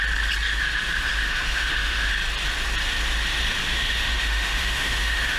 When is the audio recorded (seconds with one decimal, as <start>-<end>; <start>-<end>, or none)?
0.0-0.5; 2.1-3.6